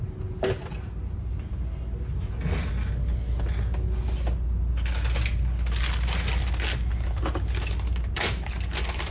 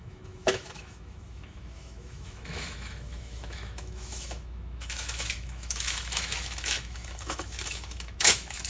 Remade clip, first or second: second